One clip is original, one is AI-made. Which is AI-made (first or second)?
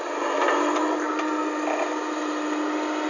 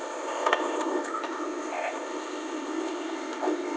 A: second